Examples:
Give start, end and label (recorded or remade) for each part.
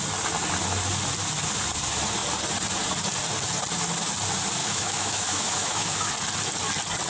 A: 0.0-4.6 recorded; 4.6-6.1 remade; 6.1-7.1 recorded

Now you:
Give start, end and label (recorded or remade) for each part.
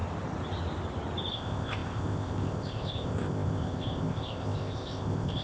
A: 0.0-1.3 recorded; 1.3-5.4 remade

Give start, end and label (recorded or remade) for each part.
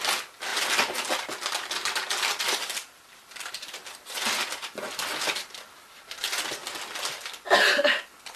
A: 0.0-0.5 recorded; 0.5-5.4 remade; 5.4-6.6 recorded; 6.6-7.3 remade; 7.3-8.4 recorded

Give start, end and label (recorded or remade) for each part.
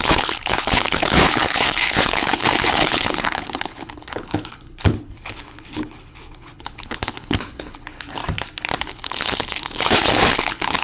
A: 0.0-8.2 remade; 8.2-8.8 recorded; 8.8-10.8 remade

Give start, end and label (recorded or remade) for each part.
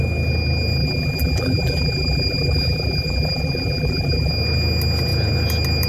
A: 0.0-0.8 recorded; 0.8-4.3 remade; 4.3-5.9 recorded